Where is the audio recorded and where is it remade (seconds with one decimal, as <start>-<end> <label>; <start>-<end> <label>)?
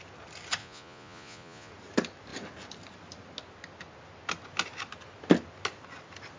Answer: 0.0-0.6 recorded; 0.6-1.7 remade; 1.7-6.4 recorded